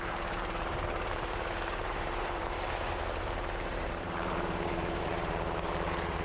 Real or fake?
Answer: fake